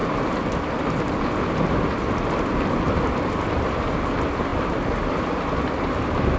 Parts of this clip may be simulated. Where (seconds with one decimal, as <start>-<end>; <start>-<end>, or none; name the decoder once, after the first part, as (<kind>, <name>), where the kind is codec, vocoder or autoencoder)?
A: 4.5-5.7 (vocoder, BigVGAN v2)